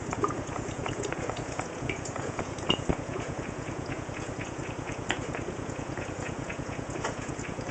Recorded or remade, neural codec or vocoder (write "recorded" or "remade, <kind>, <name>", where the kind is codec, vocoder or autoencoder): remade, vocoder, Vocos